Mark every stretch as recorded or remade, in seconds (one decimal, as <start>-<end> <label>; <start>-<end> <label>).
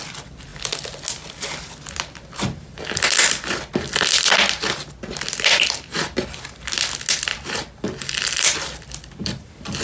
0.0-7.3 recorded; 7.3-8.8 remade; 8.8-9.8 recorded